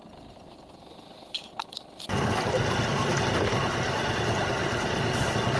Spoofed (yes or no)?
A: no